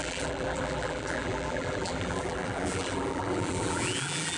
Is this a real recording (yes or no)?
no